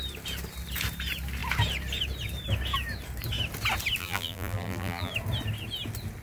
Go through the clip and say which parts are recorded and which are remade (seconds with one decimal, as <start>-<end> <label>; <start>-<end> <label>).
0.0-4.0 recorded; 4.0-5.1 remade; 5.1-6.2 recorded